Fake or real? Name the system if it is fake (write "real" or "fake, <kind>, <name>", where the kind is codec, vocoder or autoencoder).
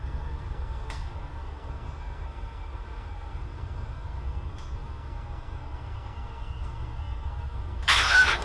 fake, codec, SNAC